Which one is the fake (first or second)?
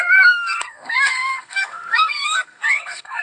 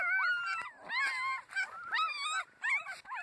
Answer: first